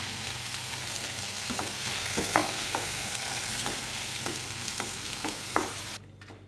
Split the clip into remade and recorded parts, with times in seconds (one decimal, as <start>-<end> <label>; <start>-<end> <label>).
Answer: 0.0-5.6 remade; 5.6-6.5 recorded